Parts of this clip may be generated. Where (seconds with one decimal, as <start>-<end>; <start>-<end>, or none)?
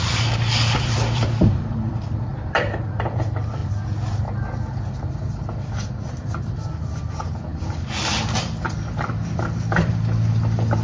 0.0-3.6; 7.1-10.8